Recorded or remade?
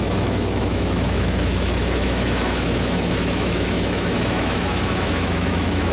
remade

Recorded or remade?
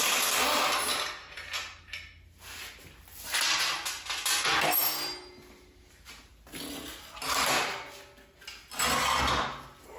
recorded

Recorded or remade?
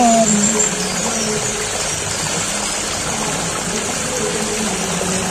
recorded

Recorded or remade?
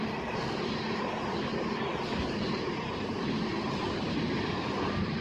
recorded